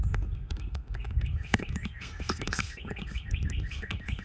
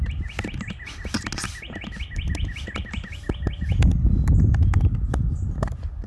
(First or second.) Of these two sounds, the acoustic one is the second